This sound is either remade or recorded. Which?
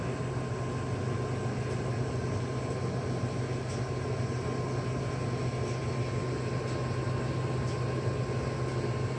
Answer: recorded